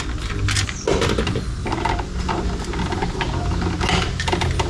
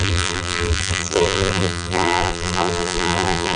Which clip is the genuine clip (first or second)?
first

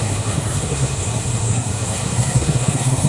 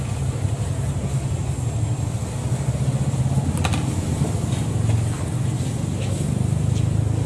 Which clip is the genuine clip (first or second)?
second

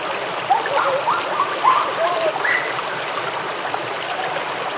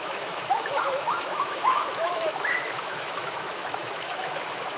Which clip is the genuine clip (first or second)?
first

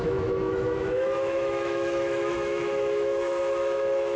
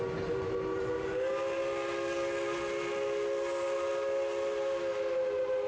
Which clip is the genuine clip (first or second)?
second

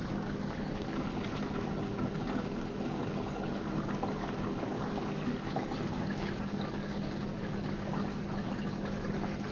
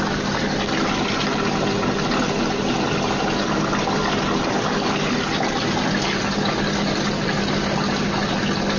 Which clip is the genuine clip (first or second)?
second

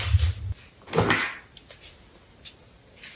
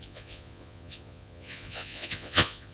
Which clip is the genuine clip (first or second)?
first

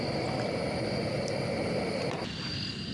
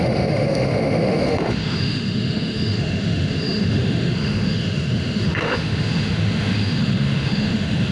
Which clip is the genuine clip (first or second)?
first